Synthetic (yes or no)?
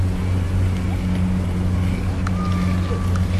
no